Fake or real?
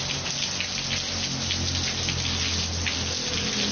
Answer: real